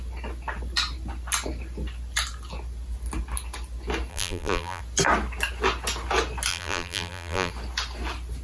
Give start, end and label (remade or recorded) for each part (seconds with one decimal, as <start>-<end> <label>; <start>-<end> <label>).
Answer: 0.0-4.1 recorded; 4.1-4.8 remade; 4.8-6.5 recorded; 6.5-7.5 remade; 7.5-8.4 recorded